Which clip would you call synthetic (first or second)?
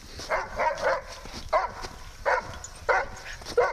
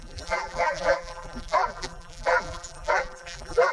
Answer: second